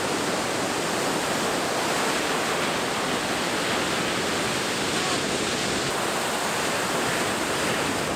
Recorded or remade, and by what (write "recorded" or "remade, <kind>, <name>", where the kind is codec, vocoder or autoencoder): recorded